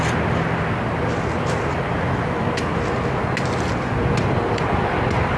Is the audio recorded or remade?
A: recorded